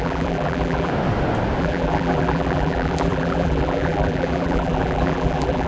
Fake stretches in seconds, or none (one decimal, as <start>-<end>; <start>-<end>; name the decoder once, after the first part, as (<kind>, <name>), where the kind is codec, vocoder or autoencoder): 0.0-0.9 (vocoder, BigVGAN v2); 1.6-5.7